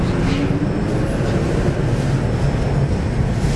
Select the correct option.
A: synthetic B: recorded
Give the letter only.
B